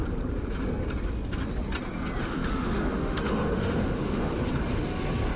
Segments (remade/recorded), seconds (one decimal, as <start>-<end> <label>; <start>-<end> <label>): 0.0-2.2 recorded; 2.2-4.3 remade; 4.3-5.4 recorded